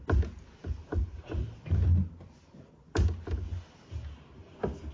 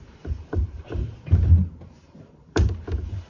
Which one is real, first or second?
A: first